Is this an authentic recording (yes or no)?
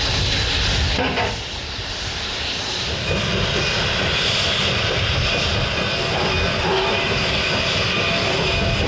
yes